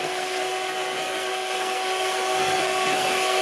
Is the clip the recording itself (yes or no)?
no